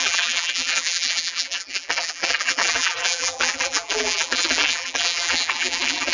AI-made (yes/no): yes